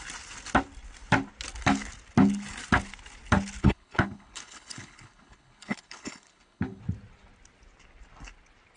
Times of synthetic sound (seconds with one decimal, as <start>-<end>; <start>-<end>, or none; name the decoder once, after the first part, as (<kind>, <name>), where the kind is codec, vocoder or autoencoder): 3.6-6.8 (codec, HILCodec)